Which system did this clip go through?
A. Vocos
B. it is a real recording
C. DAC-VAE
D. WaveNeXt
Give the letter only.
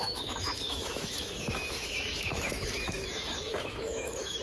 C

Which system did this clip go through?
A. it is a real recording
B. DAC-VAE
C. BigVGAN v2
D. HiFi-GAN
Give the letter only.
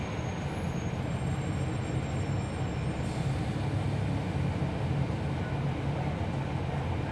A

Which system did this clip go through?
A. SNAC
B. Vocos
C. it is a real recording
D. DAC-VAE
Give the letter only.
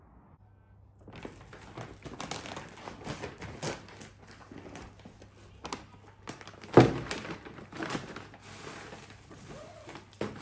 C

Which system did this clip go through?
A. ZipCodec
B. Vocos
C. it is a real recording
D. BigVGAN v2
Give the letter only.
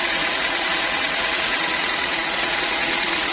B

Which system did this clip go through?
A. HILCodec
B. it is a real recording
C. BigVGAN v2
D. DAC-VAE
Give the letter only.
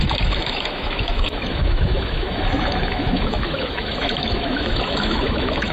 D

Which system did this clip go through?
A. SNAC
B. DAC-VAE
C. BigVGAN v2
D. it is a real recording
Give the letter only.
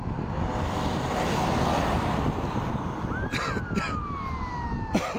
D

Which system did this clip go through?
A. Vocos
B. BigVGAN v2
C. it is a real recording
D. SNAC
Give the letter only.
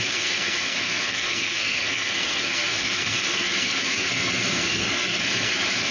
D